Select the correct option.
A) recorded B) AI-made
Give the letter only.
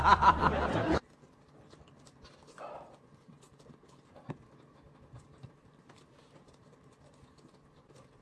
B